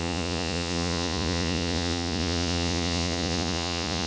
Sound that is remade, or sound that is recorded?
remade